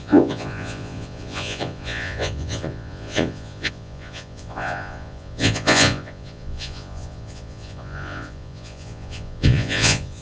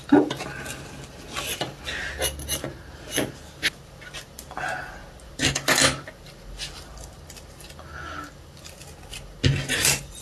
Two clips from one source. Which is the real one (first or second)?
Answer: second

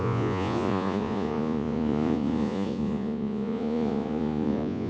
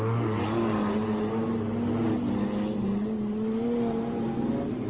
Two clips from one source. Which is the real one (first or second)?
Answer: second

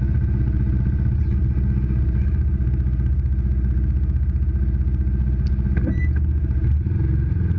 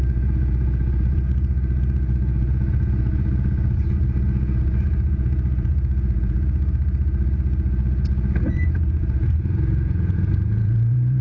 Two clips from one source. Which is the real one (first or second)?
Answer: first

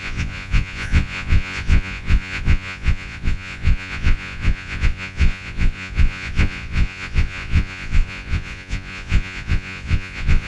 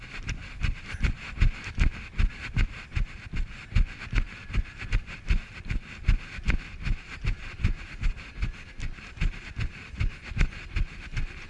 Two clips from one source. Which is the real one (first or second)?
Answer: second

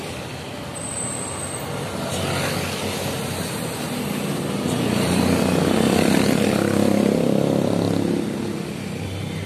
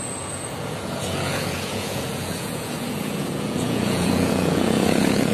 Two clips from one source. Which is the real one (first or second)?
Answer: first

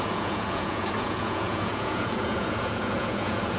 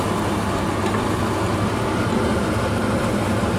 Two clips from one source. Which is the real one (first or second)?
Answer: second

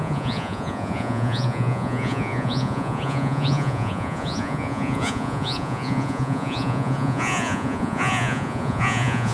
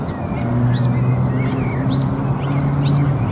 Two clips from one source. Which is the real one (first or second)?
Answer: second